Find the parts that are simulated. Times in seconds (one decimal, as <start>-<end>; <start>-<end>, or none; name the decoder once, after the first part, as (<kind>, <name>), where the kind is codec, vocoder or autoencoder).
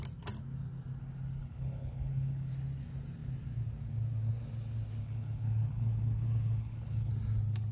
1.4-2.5 (codec, HILCodec); 5.0-7.1